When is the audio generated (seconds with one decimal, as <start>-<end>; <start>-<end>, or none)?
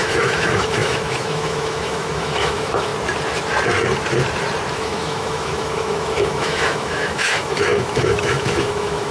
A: 0.0-2.9; 4.7-9.1